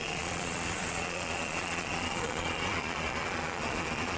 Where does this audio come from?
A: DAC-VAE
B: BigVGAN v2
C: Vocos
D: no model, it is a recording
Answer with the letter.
C